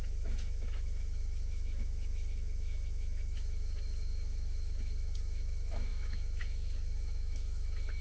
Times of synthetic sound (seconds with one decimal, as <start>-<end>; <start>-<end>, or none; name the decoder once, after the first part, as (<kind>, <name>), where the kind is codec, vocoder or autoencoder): 0.0-8.0 (autoencoder, DAC-VAE)